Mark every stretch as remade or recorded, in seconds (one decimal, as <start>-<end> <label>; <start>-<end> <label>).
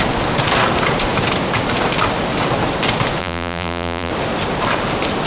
0.0-3.2 recorded; 3.2-4.1 remade; 4.1-5.3 recorded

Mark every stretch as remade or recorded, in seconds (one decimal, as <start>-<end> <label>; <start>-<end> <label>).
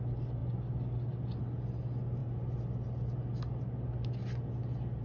0.0-5.0 recorded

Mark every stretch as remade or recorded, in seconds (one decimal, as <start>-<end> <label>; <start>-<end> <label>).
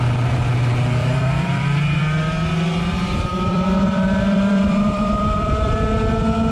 0.0-1.0 recorded; 1.0-2.0 remade; 2.0-3.3 recorded; 3.3-5.9 remade; 5.9-6.5 recorded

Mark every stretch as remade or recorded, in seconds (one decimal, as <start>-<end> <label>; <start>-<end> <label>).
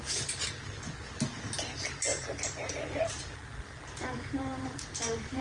0.0-2.1 recorded; 2.1-2.7 remade; 2.7-4.0 recorded; 4.0-5.4 remade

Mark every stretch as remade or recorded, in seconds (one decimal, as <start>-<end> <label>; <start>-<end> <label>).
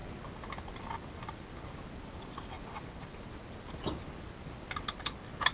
0.0-5.5 recorded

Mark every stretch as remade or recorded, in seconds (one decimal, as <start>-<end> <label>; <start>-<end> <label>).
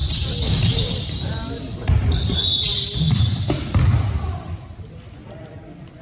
0.0-1.9 remade; 1.9-2.7 recorded; 2.7-5.0 remade; 5.0-6.0 recorded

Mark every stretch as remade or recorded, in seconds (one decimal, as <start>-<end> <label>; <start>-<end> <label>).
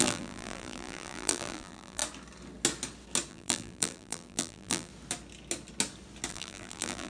0.0-2.0 remade; 2.0-3.3 recorded; 3.3-4.9 remade; 4.9-6.3 recorded; 6.3-7.1 remade